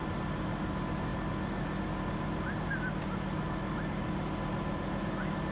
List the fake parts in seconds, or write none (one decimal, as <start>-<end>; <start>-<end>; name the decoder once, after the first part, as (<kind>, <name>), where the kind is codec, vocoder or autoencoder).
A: none